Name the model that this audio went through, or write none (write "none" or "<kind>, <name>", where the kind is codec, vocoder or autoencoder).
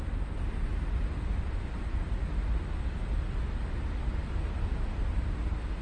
none